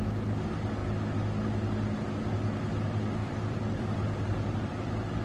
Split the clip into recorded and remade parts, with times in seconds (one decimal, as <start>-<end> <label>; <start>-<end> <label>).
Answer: 0.0-3.2 recorded; 3.2-4.7 remade; 4.7-5.2 recorded